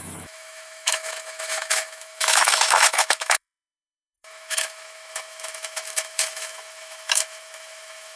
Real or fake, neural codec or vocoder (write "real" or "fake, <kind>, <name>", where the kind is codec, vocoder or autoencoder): fake, autoencoder, DAC-VAE